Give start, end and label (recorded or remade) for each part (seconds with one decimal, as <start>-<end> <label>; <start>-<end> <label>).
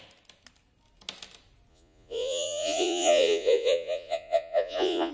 0.0-1.7 recorded; 1.7-5.1 remade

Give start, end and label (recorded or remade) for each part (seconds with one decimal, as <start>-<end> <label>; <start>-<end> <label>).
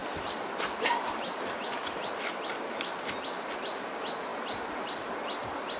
0.0-5.8 recorded